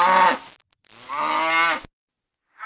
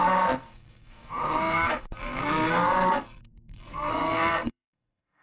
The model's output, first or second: second